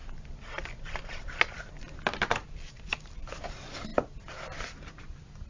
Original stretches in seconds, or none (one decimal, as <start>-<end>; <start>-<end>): 0.0-5.5